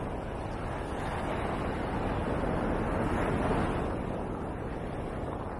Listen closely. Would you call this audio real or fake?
real